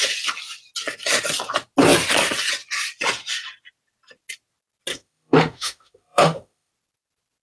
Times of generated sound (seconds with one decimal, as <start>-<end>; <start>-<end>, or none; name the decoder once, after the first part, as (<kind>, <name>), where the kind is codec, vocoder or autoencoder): 4.9-6.7 (autoencoder, DAC-VAE)